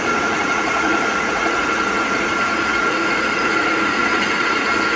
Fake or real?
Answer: fake